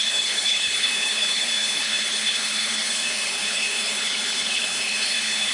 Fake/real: fake